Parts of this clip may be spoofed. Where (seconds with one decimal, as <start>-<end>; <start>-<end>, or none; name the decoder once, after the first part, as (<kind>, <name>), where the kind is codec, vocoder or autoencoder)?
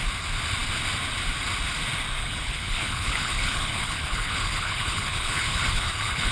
2.2-6.3 (codec, HILCodec)